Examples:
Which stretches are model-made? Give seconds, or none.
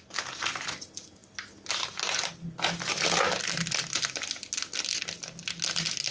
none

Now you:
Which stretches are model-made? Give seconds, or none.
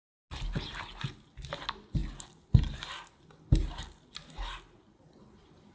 none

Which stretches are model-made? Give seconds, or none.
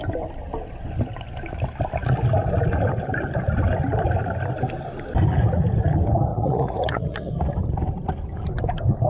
6.3-7.3 (vocoder, Vocos)